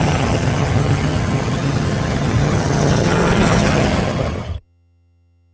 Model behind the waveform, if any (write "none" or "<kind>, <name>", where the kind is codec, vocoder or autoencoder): vocoder, HiFi-GAN